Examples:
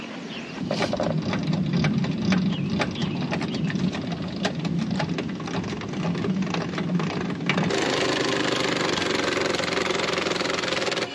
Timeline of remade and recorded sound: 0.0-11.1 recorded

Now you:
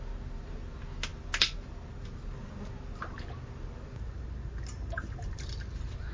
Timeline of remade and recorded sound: 0.0-6.1 recorded

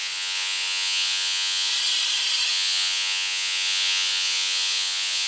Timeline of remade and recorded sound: 0.0-1.7 remade; 1.7-2.5 recorded; 2.5-5.3 remade

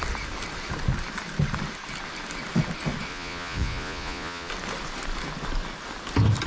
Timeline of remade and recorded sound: 0.0-3.1 recorded; 3.1-4.5 remade; 4.5-6.5 recorded